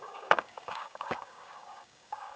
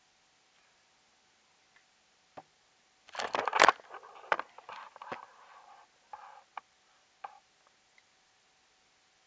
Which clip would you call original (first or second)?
second